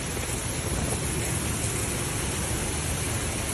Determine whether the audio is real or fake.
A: real